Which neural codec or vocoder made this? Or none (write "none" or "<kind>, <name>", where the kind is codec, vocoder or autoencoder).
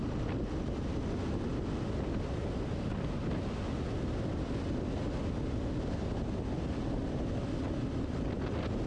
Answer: none